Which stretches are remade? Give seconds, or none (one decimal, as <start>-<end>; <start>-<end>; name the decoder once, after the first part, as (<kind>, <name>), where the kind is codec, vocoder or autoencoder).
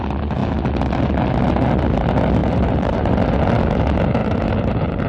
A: 2.4-3.1 (vocoder, BigVGAN v2); 4.2-5.1